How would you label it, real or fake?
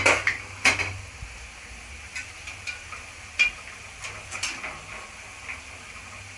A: real